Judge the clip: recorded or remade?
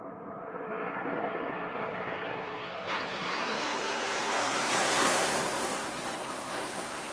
remade